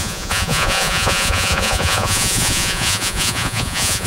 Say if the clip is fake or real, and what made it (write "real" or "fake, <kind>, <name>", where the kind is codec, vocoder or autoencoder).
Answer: fake, vocoder, Vocos